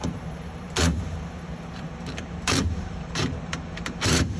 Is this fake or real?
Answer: fake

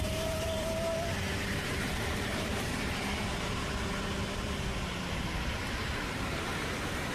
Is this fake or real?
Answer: fake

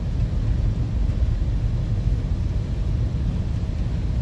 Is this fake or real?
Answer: real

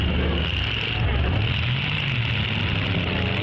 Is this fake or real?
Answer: real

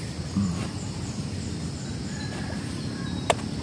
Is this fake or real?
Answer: real